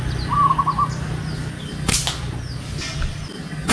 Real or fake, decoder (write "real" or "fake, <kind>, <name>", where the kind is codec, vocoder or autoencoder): real